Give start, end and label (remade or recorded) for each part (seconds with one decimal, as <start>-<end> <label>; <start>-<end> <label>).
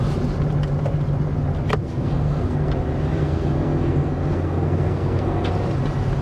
0.0-1.8 recorded; 1.8-2.7 remade; 2.7-3.2 recorded; 3.2-5.5 remade; 5.5-6.2 recorded